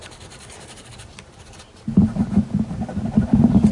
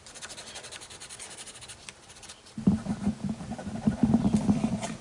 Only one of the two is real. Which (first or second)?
second